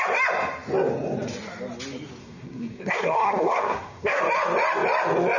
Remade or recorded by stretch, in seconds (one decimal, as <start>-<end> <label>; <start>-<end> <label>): 0.0-2.2 recorded; 2.2-4.2 remade; 4.2-5.4 recorded